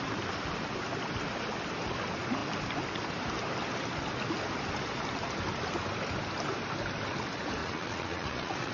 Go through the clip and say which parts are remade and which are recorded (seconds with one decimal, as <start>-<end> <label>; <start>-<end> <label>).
0.0-7.6 recorded; 7.6-8.7 remade